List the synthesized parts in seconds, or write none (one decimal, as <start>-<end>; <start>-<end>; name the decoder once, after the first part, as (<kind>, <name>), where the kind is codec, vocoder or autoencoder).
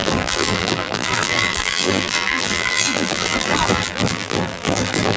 0.0-5.2 (vocoder, BigVGAN v2)